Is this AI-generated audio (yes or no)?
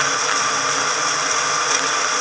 no